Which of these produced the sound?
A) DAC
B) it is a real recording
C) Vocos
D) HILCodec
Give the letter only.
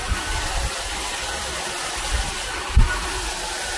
B